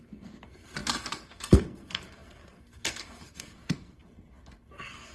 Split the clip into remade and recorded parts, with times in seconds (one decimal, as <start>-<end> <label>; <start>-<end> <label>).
0.0-5.1 remade